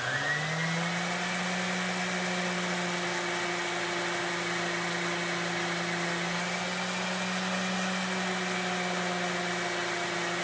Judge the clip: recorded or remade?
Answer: recorded